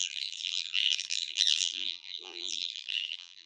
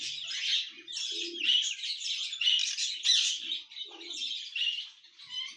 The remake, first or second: first